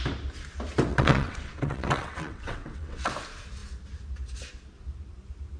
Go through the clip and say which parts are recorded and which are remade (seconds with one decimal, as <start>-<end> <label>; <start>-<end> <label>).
0.0-0.9 recorded; 0.9-3.1 remade; 3.1-5.6 recorded